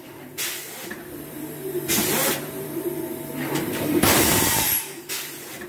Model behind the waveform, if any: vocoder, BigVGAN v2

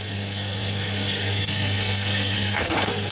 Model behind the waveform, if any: codec, SNAC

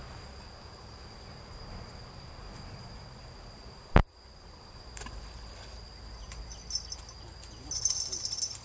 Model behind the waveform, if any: none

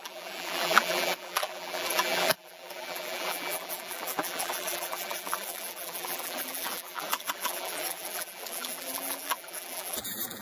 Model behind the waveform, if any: vocoder, BigVGAN v2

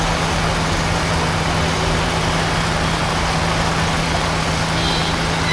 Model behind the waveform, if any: none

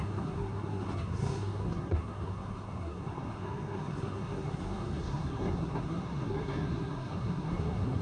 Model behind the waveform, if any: codec, SNAC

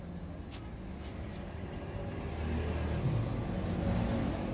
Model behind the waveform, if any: none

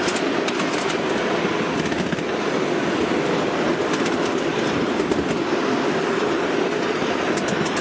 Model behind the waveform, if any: none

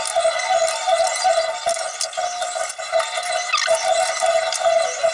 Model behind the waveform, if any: none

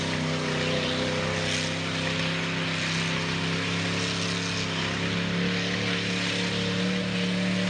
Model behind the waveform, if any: none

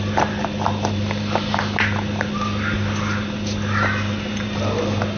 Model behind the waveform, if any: none